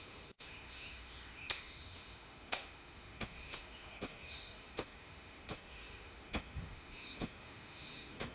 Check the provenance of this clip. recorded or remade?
remade